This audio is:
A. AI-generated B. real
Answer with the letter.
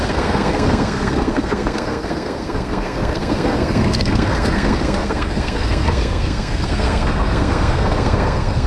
A